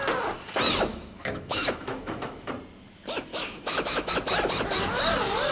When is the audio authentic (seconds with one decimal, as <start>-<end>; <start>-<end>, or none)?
0.0-0.9; 2.5-3.3; 4.1-5.5